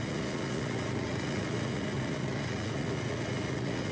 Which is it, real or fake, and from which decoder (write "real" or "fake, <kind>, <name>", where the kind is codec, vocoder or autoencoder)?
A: fake, vocoder, Vocos